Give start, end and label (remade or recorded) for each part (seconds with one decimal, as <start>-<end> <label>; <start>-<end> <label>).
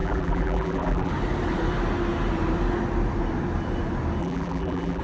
0.0-1.1 remade; 1.1-4.2 recorded; 4.2-5.0 remade